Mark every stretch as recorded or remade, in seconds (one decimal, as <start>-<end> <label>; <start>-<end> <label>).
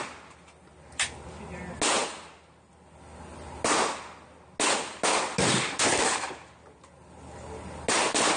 0.0-8.4 recorded